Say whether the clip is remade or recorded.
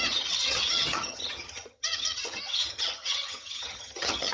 remade